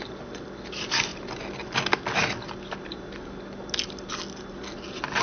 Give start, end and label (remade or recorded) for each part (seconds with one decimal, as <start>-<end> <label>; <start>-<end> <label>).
0.0-5.2 recorded